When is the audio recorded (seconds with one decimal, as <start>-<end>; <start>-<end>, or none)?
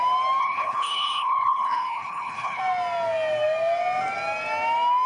0.0-0.4; 2.6-5.1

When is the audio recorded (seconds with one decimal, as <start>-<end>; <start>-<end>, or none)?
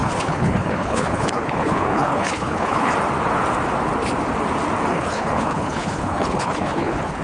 2.9-4.9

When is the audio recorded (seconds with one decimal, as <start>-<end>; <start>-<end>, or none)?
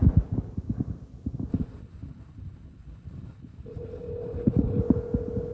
0.0-1.5; 4.8-5.5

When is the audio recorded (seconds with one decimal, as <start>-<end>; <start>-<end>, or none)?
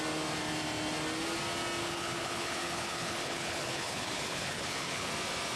0.0-1.8; 5.1-5.6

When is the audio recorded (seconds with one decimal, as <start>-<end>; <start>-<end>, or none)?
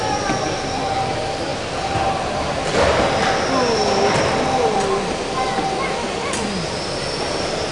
0.0-7.7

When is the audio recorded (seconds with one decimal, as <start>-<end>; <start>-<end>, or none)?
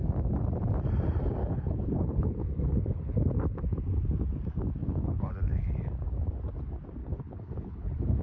0.0-1.4; 3.3-4.8; 5.3-7.0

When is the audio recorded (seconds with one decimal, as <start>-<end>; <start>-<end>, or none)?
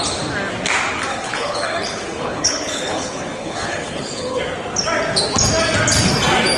0.0-1.1; 4.4-6.6